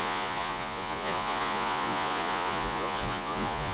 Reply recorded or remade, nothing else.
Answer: remade